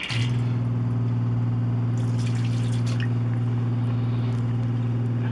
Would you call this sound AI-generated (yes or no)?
no